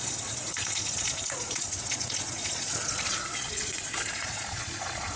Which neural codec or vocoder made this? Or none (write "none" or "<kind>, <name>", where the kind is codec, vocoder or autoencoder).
vocoder, Vocos